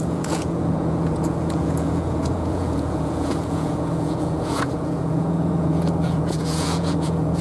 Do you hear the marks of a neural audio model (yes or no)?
yes